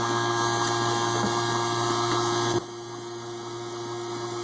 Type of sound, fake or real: real